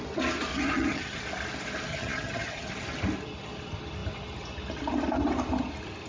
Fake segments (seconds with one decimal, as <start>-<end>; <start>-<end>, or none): 0.5-1.2; 1.9-2.7